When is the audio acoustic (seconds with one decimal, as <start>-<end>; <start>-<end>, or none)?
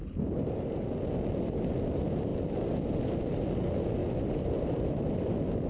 0.0-5.7